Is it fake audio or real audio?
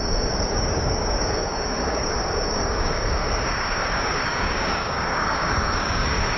fake